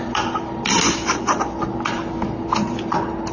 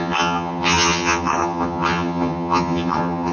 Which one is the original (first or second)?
first